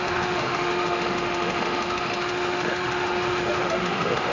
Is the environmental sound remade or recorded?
remade